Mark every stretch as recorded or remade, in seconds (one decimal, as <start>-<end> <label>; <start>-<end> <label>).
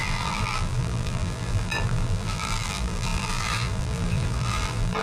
0.0-5.0 remade